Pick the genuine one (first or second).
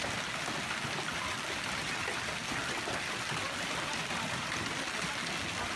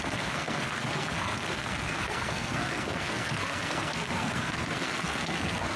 first